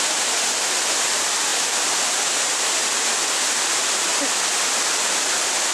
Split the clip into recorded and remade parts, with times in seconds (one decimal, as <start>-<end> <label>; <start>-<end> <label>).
0.0-5.7 remade